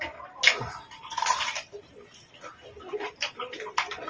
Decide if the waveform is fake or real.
real